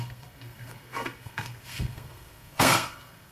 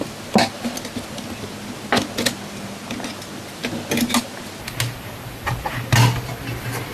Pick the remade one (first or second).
first